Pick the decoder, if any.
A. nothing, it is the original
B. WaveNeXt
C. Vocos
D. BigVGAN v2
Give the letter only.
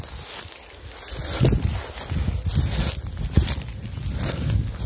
A